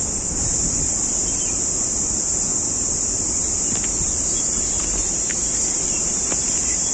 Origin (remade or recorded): remade